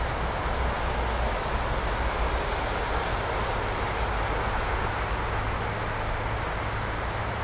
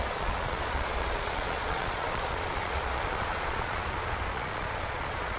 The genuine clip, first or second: first